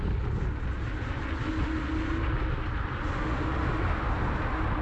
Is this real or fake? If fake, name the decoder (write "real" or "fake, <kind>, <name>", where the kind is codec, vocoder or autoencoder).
real